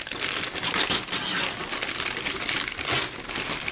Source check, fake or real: real